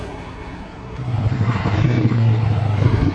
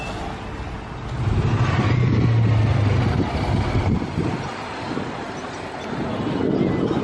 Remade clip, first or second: first